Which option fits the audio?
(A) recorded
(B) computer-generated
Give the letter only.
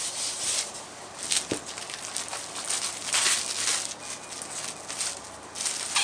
A